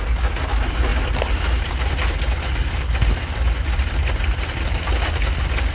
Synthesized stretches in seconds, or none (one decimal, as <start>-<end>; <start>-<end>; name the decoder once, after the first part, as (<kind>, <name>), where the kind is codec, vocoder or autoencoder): none